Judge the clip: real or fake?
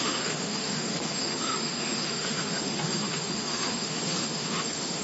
fake